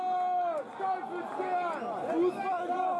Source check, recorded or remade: recorded